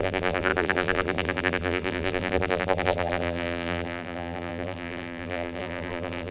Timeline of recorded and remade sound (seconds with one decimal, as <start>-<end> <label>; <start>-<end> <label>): 0.0-6.3 remade